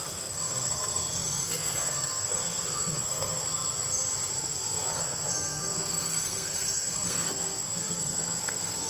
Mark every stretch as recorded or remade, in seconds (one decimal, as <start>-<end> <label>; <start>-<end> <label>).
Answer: 0.0-3.4 remade; 3.4-4.5 recorded; 4.5-8.9 remade